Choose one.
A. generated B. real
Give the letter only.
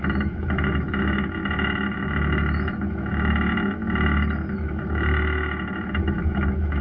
A